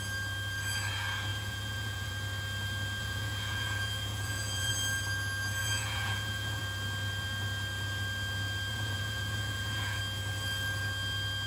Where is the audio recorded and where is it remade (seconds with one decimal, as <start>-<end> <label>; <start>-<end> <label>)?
0.0-1.3 recorded; 1.3-2.1 remade; 2.1-3.0 recorded; 3.0-4.7 remade; 4.7-5.6 recorded; 5.6-6.6 remade; 6.6-8.7 recorded; 8.7-10.0 remade; 10.0-11.5 recorded